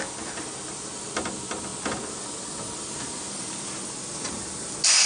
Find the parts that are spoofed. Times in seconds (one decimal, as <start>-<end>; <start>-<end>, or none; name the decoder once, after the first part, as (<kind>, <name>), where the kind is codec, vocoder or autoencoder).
none